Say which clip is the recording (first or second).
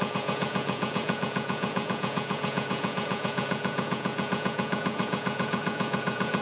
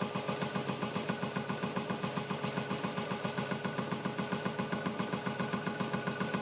second